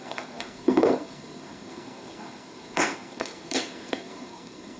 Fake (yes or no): yes